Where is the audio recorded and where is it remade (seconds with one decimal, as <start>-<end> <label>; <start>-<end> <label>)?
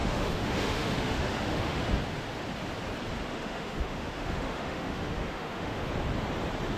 0.0-1.8 remade; 1.8-3.3 recorded; 3.3-5.9 remade; 5.9-6.8 recorded